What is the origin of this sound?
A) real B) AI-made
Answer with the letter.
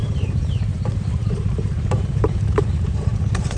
B